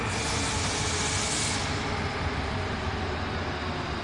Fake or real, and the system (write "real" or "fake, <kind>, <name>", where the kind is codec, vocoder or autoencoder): real